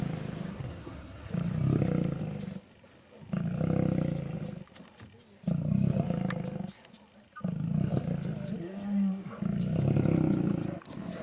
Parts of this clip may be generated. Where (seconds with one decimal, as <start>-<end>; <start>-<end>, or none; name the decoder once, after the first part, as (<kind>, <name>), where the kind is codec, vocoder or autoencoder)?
0.5-1.3 (codec, SNAC)